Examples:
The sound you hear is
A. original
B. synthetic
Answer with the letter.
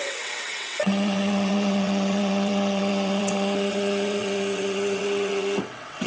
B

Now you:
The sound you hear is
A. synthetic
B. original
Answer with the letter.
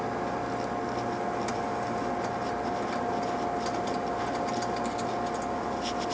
B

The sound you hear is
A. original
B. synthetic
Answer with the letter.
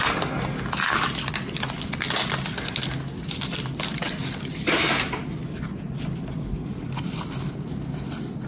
A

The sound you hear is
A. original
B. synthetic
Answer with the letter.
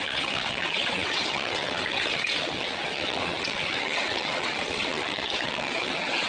B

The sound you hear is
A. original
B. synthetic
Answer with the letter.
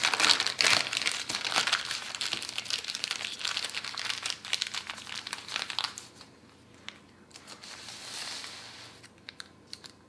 A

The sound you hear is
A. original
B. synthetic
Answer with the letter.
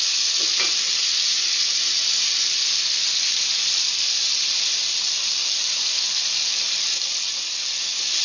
A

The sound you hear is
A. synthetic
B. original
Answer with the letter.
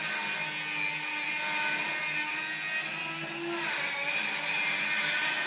B